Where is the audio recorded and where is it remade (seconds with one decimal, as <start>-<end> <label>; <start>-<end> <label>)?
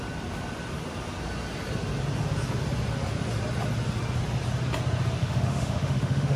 0.0-5.2 recorded; 5.2-6.4 remade